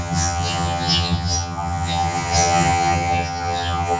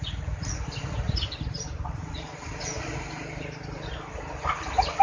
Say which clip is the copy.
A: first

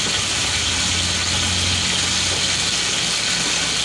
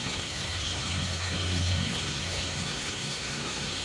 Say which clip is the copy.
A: second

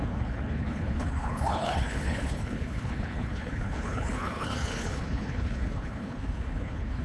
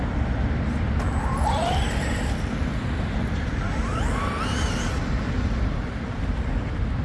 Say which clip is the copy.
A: first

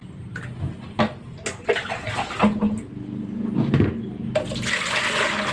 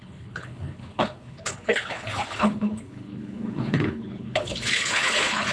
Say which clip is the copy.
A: second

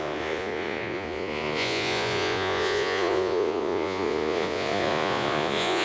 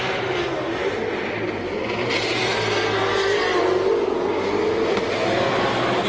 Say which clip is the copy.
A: first